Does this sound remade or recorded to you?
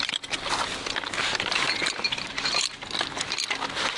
recorded